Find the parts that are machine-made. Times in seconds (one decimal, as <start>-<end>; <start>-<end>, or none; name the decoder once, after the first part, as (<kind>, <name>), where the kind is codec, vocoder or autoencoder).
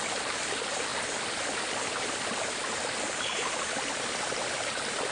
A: none